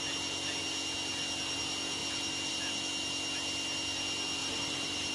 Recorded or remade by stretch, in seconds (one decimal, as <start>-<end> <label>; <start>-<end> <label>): 0.0-4.4 recorded; 4.4-5.1 remade